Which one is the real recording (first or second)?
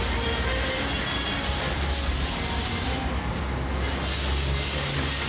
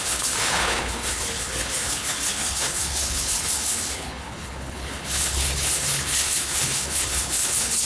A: first